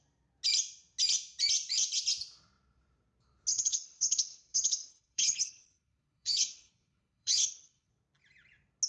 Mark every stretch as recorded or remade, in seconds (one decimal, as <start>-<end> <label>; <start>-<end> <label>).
0.0-3.5 recorded; 3.5-7.9 remade; 7.9-8.9 recorded